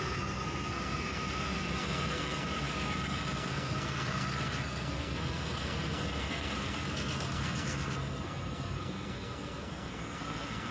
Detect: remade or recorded remade